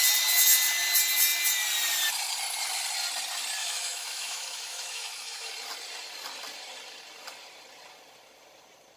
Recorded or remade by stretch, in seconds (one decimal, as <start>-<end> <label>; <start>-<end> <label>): 0.0-3.6 recorded; 3.6-5.5 remade; 5.5-9.0 recorded